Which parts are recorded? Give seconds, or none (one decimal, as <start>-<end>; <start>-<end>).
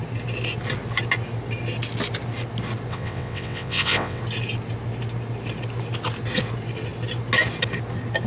0.0-2.9; 4.2-8.3